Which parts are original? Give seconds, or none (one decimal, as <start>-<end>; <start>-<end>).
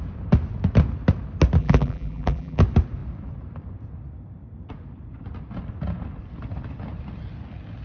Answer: 0.0-1.6; 2.6-7.8